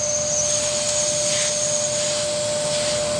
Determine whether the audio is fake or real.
real